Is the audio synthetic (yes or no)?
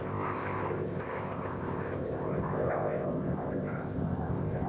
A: yes